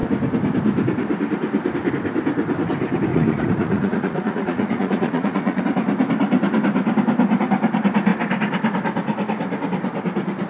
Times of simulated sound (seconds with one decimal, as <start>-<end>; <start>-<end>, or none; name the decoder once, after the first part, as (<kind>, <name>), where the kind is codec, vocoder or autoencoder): 3.1-5.6 (vocoder, Vocos)